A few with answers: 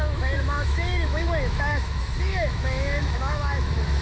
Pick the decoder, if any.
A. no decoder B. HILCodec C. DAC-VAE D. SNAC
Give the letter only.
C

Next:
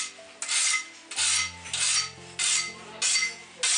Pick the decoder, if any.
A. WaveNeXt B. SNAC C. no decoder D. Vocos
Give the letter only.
C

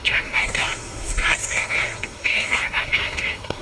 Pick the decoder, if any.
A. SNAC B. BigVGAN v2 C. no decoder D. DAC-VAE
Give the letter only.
A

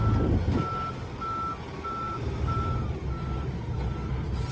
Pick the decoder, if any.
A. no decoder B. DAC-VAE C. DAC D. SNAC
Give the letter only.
A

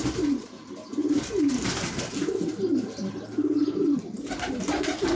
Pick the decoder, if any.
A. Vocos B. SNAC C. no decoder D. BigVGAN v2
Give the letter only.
C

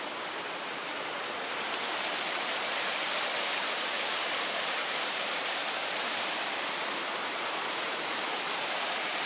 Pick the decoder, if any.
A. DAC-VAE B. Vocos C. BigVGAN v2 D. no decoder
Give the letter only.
C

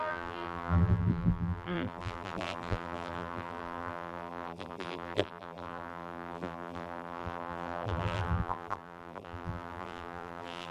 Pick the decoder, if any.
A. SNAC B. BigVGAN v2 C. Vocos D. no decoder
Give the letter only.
B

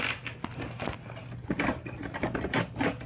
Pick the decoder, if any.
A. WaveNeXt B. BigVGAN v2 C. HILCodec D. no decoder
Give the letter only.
D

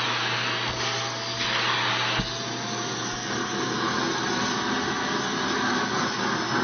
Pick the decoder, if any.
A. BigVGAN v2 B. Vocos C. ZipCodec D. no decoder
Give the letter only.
D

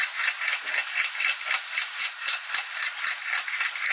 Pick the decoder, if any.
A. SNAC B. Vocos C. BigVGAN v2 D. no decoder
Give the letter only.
D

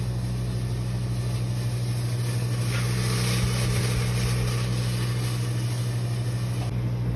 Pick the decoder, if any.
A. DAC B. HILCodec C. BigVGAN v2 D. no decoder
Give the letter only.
D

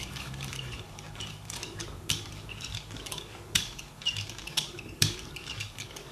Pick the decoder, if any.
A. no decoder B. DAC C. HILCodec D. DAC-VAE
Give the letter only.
B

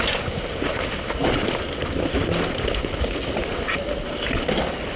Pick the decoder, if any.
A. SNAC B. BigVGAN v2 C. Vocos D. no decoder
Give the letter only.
D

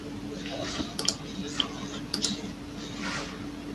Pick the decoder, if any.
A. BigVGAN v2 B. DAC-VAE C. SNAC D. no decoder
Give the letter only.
D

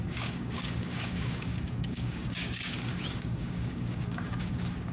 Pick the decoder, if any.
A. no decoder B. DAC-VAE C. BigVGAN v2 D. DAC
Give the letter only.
D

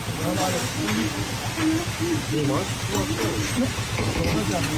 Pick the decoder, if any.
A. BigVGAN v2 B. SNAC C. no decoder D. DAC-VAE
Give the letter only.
C